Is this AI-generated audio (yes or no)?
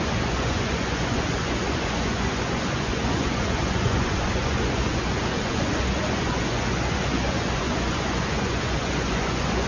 yes